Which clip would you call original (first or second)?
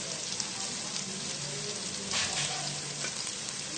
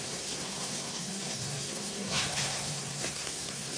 first